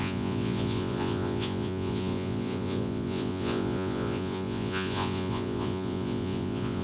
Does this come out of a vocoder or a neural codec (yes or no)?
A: yes